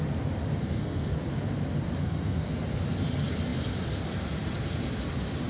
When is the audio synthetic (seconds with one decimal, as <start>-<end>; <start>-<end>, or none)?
0.6-1.1; 2.0-2.5

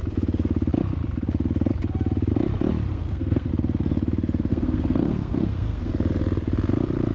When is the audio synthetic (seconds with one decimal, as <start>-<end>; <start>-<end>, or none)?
2.9-3.5; 4.5-5.9